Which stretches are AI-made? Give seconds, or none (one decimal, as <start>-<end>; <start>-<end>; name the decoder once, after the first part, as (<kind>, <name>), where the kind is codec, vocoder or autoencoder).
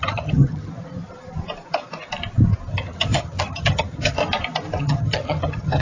0.0-0.7 (vocoder, HiFi-GAN); 2.7-4.2; 4.8-5.8